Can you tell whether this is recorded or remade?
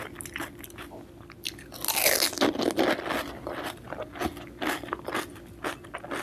recorded